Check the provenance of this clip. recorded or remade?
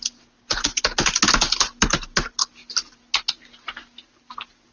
recorded